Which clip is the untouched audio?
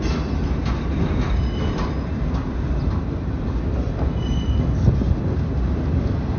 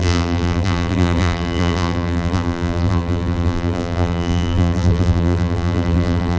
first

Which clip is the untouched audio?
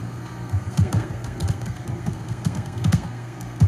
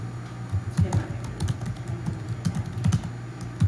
second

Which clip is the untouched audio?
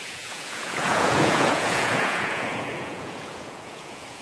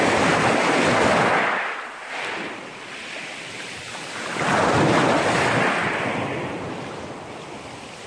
second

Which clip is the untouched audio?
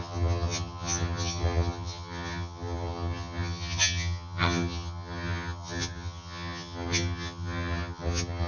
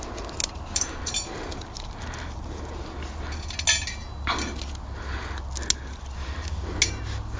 second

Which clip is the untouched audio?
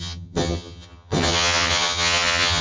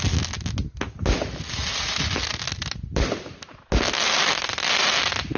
second